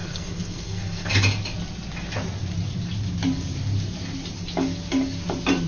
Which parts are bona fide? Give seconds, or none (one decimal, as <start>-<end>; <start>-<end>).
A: 1.1-5.7